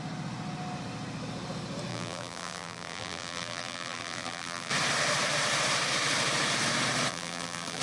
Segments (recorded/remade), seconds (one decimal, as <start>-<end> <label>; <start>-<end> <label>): 0.0-1.9 recorded; 1.9-4.7 remade; 4.7-7.1 recorded; 7.1-7.8 remade